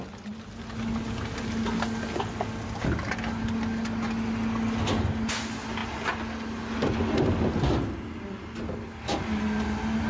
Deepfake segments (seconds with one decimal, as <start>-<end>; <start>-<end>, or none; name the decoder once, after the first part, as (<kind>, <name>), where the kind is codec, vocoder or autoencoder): none

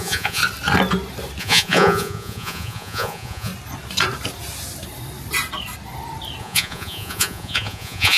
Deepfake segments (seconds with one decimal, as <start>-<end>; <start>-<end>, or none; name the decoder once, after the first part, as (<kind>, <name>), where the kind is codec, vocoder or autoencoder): 0.0-0.4 (vocoder, Vocos); 1.4-3.5; 6.4-8.2

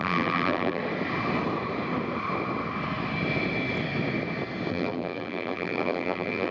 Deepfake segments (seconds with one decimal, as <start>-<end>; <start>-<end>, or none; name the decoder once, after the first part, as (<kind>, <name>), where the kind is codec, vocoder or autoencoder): 0.0-0.8 (vocoder, BigVGAN v2); 4.7-6.5